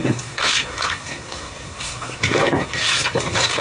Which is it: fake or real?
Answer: fake